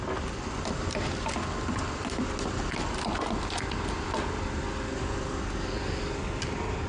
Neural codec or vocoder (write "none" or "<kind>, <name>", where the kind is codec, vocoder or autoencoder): none